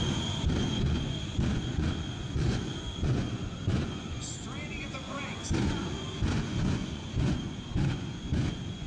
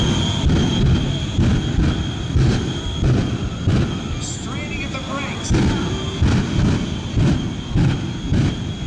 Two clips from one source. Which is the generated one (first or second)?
first